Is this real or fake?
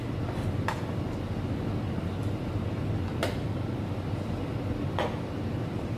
real